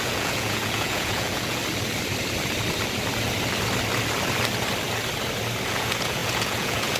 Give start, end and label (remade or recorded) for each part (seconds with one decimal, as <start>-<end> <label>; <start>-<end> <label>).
0.0-1.6 remade; 1.6-5.7 recorded; 5.7-7.0 remade